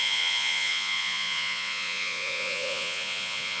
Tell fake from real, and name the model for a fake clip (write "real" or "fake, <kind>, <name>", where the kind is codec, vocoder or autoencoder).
fake, vocoder, Vocos